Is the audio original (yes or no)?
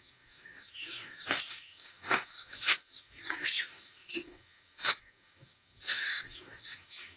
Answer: no